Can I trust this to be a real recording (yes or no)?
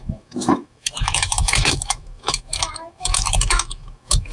no